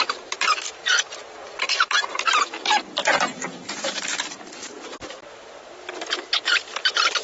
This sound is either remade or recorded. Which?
remade